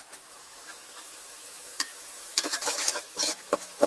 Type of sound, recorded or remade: remade